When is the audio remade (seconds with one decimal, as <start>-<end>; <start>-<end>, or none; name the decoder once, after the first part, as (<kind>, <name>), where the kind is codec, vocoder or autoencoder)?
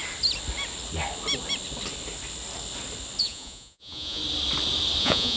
3.2-4.2 (vocoder, Vocos); 5.0-5.4